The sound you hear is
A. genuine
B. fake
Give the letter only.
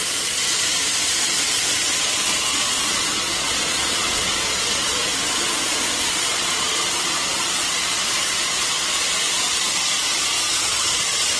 B